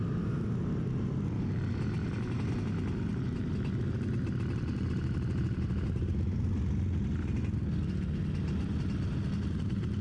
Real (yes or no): yes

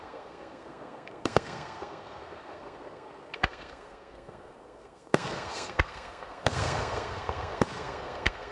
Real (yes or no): no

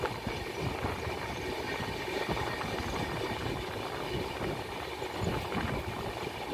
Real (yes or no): yes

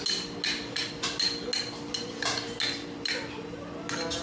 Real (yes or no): yes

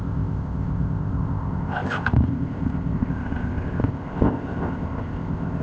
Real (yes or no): no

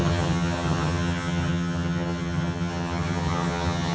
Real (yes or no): no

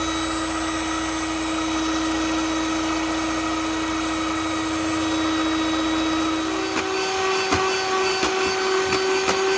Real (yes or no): yes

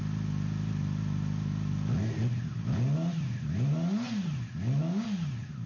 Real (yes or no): yes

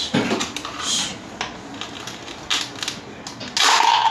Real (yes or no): yes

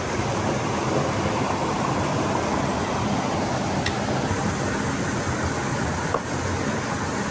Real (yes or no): yes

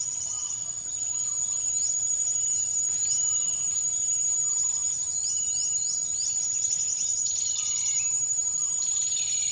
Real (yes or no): yes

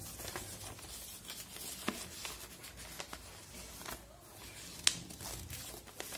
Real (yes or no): yes